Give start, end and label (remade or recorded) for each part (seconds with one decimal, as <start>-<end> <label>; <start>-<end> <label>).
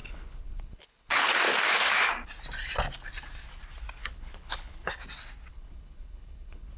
0.0-1.3 remade; 1.3-4.0 recorded; 4.0-4.9 remade; 4.9-5.5 recorded; 5.5-6.8 remade